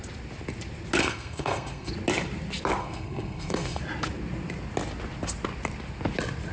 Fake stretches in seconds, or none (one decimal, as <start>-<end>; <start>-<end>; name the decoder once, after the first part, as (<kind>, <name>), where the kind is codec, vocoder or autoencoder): 1.0-1.9 (codec, SNAC); 2.8-3.8